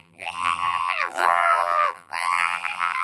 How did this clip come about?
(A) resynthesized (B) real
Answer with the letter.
A